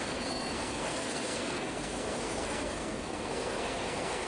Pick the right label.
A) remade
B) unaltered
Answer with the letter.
A